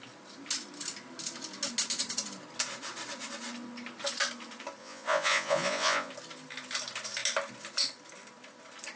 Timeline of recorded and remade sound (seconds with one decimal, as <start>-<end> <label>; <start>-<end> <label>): 0.0-4.8 recorded; 4.8-6.1 remade; 6.1-9.0 recorded